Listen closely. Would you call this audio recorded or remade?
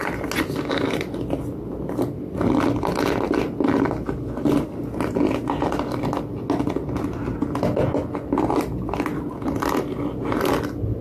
recorded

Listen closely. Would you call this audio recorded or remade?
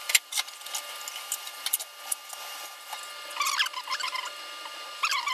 recorded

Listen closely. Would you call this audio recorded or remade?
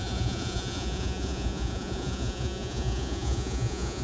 remade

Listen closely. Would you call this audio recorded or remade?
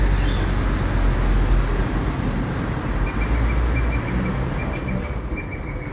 recorded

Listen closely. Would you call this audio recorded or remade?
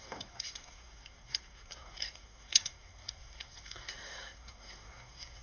remade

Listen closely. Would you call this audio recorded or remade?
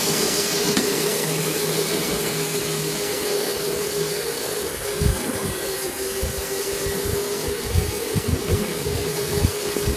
remade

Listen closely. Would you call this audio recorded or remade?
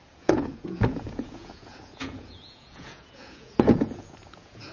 remade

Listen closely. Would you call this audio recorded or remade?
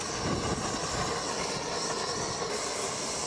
recorded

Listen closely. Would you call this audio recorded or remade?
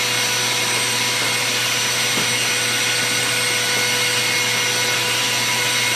recorded